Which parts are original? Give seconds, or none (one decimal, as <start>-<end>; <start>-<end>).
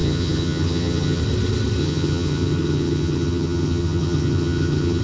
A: 1.2-1.8